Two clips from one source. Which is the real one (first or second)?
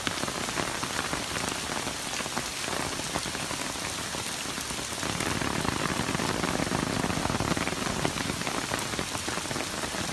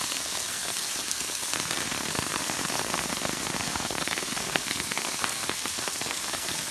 first